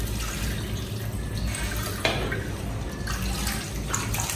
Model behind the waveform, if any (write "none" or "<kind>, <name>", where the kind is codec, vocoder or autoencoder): none